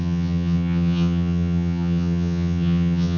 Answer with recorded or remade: remade